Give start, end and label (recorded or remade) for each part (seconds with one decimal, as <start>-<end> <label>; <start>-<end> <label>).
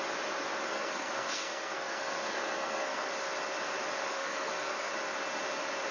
0.0-0.7 recorded; 0.7-3.1 remade; 3.1-4.1 recorded; 4.1-4.9 remade; 4.9-5.9 recorded